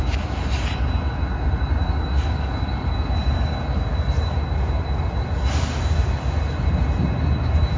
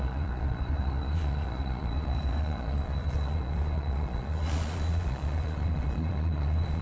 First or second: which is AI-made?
second